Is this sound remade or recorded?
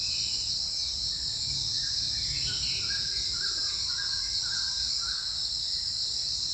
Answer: recorded